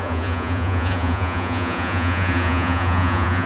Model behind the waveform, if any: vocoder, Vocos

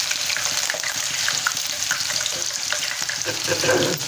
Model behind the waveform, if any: vocoder, BigVGAN v2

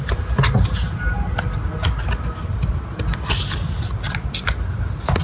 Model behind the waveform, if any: none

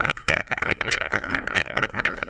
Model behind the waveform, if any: codec, SNAC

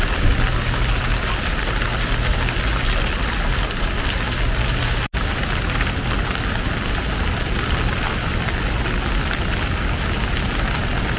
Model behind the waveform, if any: none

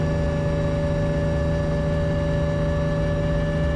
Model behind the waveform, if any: none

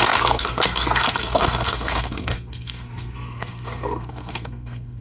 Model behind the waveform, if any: codec, SNAC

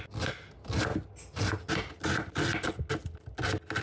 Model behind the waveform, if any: none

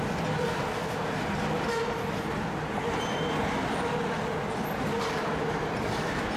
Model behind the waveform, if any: none